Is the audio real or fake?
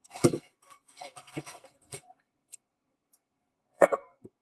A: fake